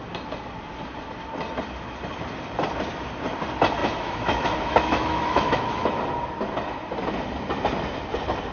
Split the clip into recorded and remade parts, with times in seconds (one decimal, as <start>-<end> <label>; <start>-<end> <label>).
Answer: 0.0-3.8 recorded; 3.8-6.0 remade; 6.0-8.5 recorded